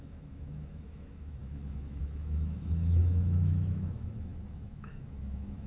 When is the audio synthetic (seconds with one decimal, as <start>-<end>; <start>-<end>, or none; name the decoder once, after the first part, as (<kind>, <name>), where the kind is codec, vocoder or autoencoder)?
0.0-5.7 (autoencoder, DAC-VAE)